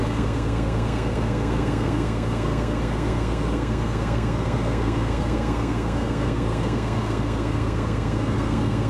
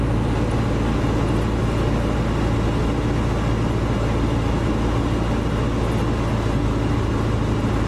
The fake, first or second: first